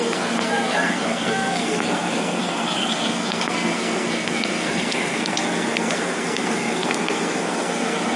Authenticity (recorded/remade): remade